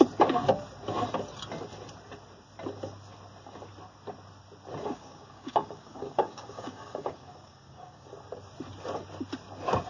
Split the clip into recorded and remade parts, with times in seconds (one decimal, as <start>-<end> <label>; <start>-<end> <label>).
0.0-4.8 recorded; 4.8-8.1 remade; 8.1-9.9 recorded